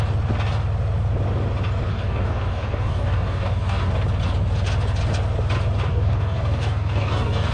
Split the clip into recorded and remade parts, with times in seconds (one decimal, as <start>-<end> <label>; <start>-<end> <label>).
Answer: 0.0-1.9 recorded; 1.9-3.9 remade; 3.9-5.9 recorded; 5.9-7.5 remade